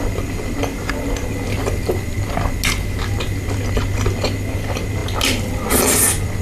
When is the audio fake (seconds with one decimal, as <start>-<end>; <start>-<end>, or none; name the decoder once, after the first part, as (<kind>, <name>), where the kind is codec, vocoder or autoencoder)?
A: none